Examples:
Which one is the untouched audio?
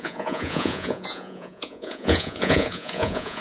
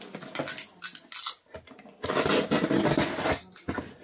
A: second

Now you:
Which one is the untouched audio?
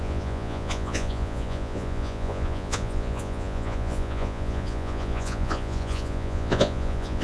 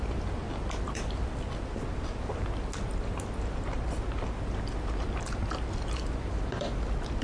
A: second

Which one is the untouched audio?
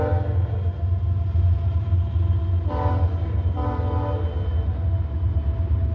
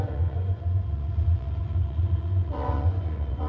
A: first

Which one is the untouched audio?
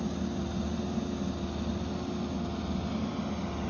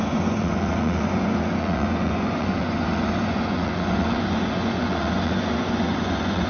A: first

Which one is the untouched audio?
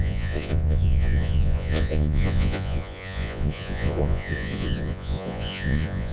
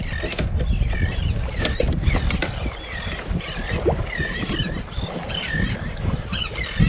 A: second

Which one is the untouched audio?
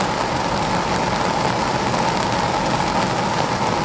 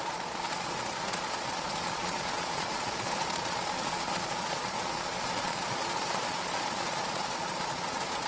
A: first